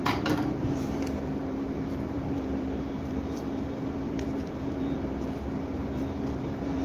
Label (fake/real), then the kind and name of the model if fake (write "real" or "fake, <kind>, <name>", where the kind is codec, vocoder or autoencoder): fake, vocoder, BigVGAN v2